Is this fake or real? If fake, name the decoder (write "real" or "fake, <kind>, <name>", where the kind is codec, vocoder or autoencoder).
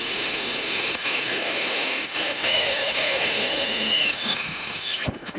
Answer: fake, autoencoder, DAC-VAE